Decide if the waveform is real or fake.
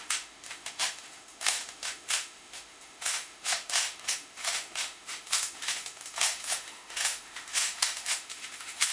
fake